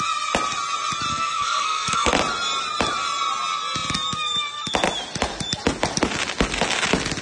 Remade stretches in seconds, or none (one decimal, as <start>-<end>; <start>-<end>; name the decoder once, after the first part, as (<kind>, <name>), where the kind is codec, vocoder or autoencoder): 1.1-2.1 (codec, SNAC)